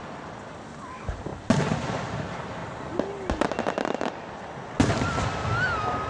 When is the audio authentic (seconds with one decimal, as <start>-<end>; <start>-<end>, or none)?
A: 0.0-6.1